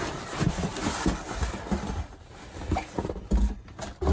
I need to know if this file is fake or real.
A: real